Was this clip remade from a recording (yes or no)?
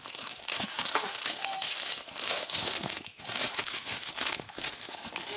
yes